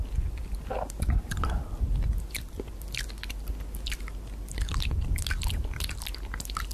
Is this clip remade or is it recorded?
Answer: recorded